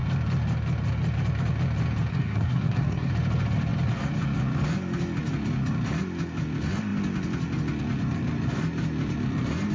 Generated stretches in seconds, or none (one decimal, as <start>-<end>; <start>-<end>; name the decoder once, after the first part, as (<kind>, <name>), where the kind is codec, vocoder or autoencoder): 2.1-3.1 (codec, SNAC)